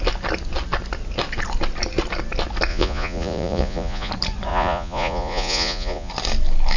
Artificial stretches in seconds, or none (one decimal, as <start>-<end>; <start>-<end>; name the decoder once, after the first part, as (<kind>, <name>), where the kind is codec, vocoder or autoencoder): 2.7-4.1 (vocoder, Vocos); 4.5-6.1